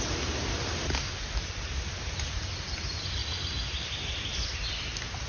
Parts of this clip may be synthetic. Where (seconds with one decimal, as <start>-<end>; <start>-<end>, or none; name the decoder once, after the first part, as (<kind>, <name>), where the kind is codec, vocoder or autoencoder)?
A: none